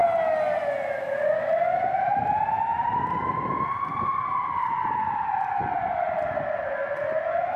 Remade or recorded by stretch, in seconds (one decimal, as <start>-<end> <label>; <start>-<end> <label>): 0.0-7.6 recorded